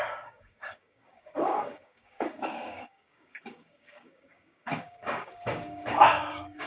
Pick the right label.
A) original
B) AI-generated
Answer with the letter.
B